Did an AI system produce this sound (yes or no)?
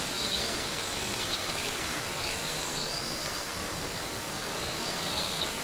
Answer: yes